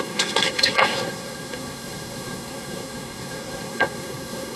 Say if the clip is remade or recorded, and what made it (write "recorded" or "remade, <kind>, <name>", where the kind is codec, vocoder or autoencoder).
remade, codec, SNAC